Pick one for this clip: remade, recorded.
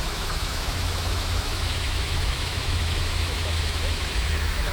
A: remade